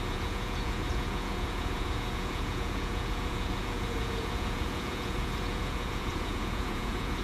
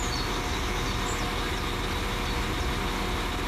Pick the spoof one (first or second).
first